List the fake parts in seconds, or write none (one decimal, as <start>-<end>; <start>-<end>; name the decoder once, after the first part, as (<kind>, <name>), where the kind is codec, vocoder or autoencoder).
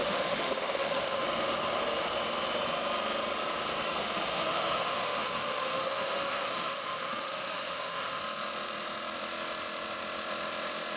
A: 0.0-1.2 (autoencoder, DAC-VAE); 4.0-8.2